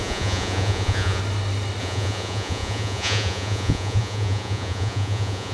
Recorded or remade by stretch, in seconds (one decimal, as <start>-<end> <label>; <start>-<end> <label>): 0.0-1.2 remade; 1.2-1.8 recorded; 1.8-5.5 remade